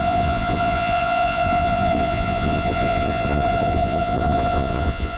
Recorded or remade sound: remade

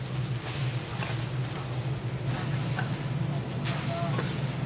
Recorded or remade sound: recorded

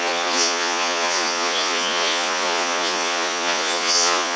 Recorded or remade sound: remade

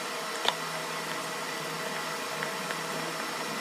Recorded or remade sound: recorded